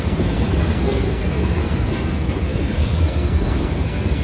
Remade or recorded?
remade